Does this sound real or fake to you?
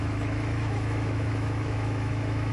fake